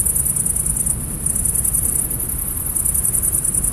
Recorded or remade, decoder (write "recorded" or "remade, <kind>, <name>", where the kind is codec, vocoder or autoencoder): recorded